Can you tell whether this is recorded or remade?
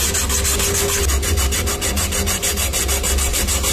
recorded